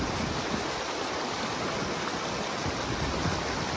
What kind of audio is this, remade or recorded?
recorded